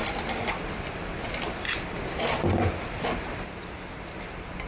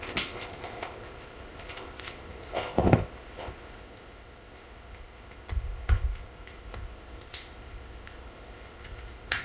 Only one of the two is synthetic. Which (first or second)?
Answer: second